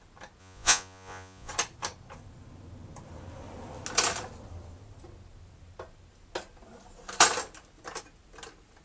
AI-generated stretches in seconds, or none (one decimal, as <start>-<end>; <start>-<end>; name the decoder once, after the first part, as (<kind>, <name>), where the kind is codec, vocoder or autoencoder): 0.4-1.5 (vocoder, Vocos)